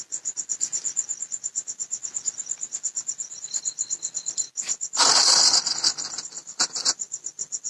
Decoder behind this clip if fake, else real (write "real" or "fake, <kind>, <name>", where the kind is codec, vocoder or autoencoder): real